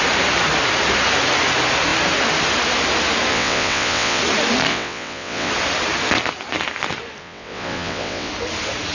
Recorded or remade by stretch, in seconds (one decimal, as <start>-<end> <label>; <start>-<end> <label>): 0.0-3.3 recorded; 3.3-4.2 remade; 4.2-4.7 recorded; 4.7-5.5 remade; 5.5-7.2 recorded; 7.2-8.3 remade; 8.3-8.9 recorded